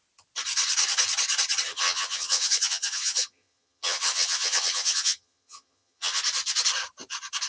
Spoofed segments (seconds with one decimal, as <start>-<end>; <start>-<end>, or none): 1.7-6.2